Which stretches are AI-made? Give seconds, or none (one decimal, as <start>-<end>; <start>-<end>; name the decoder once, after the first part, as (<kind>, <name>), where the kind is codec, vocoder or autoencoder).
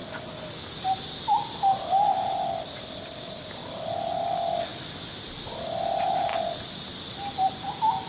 3.6-4.2 (vocoder, BigVGAN v2)